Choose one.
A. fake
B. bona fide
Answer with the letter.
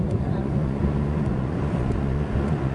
A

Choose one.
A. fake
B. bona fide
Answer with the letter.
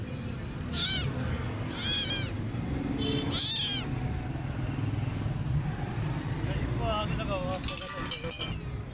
B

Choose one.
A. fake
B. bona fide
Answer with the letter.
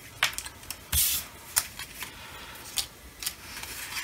B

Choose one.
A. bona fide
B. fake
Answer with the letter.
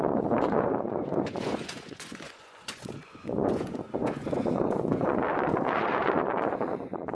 B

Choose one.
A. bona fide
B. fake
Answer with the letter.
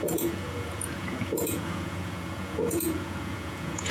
B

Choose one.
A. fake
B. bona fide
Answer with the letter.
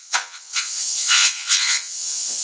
A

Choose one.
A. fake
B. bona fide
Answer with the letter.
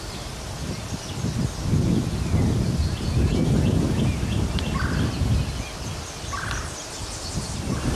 B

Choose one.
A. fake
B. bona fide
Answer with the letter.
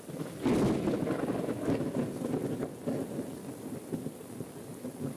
B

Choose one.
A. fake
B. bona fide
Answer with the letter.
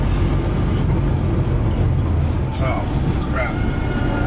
B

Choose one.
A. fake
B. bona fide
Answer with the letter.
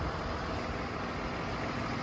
B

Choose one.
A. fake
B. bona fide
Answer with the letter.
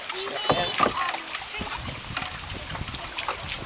B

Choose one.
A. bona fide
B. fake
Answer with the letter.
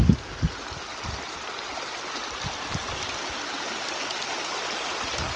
A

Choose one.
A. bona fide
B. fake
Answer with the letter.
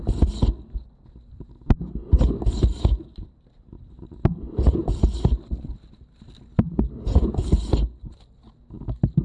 A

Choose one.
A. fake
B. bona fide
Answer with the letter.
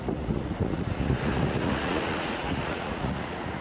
A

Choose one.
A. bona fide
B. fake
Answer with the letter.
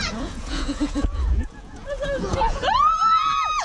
B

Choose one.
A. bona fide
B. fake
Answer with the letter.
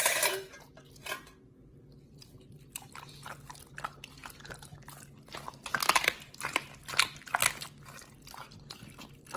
A